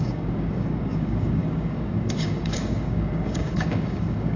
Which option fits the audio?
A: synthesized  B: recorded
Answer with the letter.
A